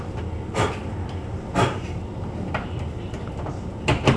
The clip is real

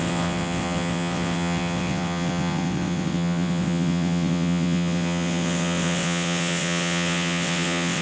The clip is fake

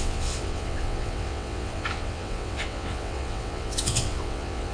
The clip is fake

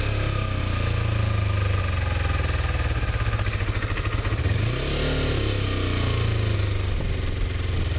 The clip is real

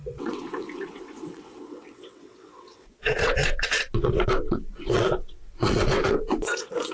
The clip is fake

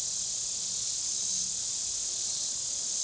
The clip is real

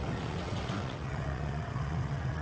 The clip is fake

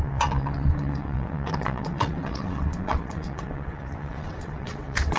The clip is fake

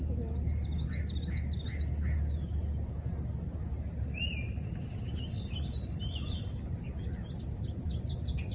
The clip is real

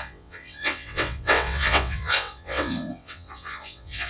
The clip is fake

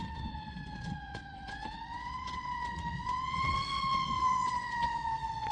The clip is fake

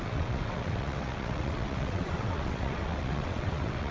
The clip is fake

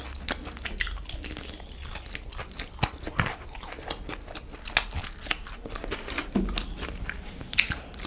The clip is real